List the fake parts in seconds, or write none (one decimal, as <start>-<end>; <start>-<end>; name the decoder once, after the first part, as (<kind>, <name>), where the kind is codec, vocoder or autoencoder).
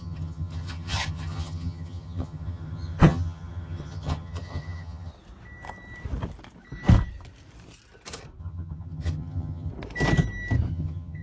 0.0-5.1 (vocoder, HiFi-GAN); 8.4-9.7; 10.7-11.2